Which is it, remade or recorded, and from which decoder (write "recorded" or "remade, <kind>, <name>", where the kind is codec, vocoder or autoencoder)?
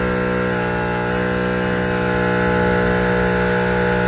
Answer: recorded